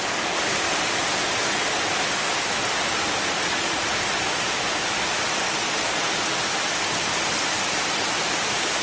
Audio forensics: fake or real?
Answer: real